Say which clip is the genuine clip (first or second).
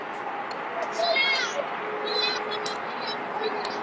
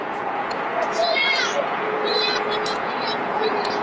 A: first